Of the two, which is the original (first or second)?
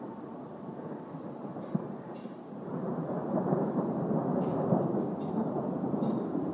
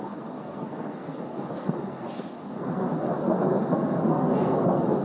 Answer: first